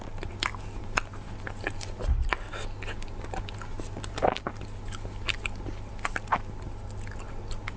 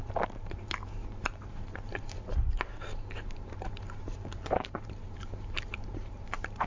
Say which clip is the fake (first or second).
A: second